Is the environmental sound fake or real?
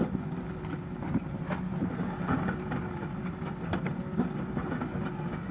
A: real